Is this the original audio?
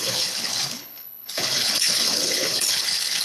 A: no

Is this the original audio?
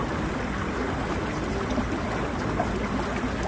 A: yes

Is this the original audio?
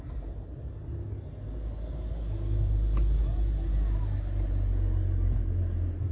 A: yes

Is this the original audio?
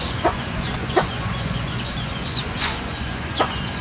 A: no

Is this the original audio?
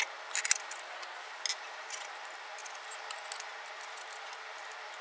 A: yes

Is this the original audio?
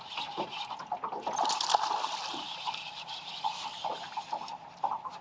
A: yes